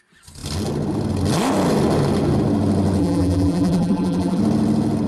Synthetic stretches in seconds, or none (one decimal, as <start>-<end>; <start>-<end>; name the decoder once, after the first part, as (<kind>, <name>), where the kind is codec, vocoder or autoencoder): 3.0-4.4 (vocoder, BigVGAN v2)